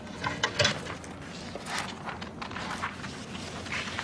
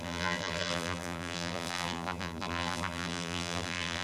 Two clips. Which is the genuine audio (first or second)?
first